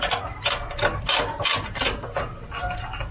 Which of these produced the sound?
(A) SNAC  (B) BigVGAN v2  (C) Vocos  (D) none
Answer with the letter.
D